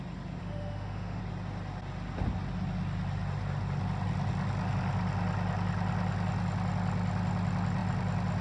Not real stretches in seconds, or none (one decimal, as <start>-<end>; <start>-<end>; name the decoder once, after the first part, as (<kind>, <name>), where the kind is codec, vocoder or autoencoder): 0.4-1.2 (autoencoder, DAC-VAE)